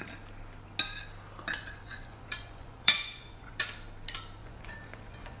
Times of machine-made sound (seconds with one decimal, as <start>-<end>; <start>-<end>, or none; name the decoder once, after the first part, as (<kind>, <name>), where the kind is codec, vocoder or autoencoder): 1.5-3.6 (vocoder, Vocos); 4.4-5.4